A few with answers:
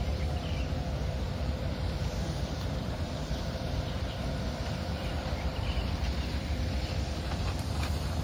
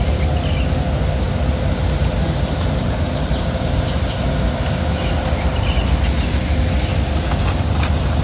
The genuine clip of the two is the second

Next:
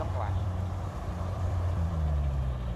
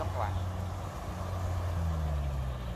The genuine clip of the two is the second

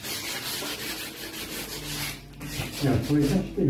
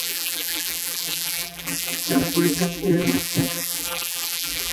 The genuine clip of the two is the first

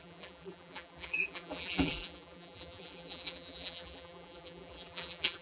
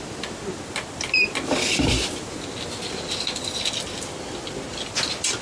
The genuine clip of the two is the second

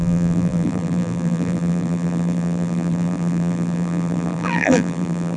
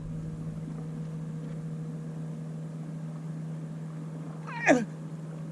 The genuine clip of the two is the second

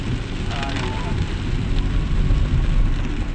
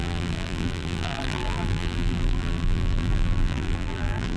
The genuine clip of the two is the first